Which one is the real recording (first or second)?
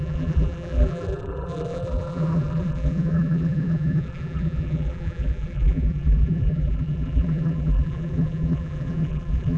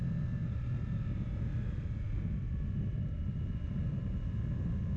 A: second